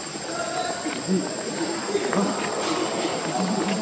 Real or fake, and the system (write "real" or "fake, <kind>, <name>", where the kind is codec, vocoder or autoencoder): real